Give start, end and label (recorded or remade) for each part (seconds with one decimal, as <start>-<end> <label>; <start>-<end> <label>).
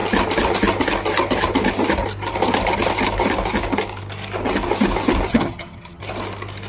0.0-5.3 recorded; 5.3-6.0 remade; 6.0-6.7 recorded